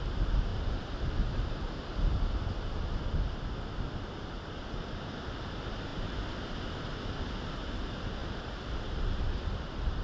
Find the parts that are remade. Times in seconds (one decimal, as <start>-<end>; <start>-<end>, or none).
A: 5.9-7.0

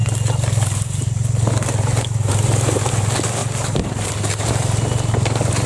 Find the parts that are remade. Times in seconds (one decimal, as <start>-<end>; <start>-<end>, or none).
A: 3.4-4.5

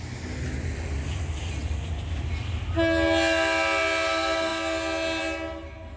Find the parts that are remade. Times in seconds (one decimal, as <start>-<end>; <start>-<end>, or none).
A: none

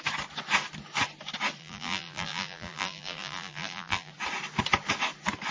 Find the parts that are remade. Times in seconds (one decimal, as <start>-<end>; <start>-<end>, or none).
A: 1.6-4.1

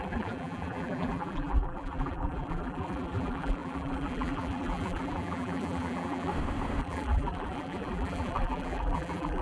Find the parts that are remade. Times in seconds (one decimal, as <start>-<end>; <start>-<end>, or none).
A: 0.0-6.3; 6.8-9.4

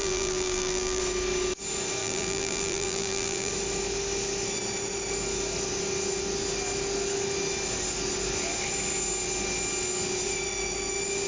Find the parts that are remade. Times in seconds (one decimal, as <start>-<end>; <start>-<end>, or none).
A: 0.0-1.0; 2.0-3.5